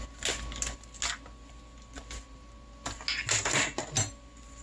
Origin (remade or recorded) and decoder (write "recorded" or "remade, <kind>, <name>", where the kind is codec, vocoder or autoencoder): recorded